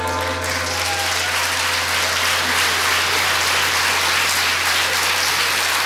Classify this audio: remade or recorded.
recorded